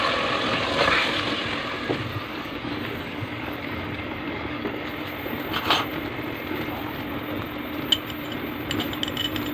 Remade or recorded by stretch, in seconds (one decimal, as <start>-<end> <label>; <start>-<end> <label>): 0.0-2.1 recorded; 2.1-4.9 remade; 4.9-9.5 recorded